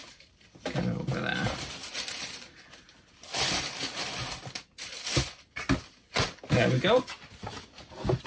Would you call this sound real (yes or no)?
yes